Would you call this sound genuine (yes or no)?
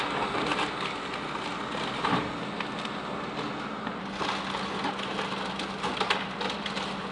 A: yes